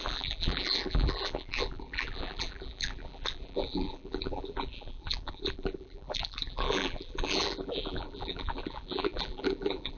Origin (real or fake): fake